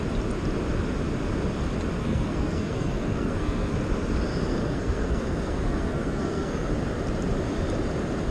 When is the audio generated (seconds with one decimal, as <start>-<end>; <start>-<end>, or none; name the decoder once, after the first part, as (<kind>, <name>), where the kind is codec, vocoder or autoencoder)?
2.0-3.7 (codec, SNAC); 4.5-6.7